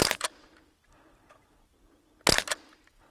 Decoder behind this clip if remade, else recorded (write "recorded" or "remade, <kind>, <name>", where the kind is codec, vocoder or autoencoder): recorded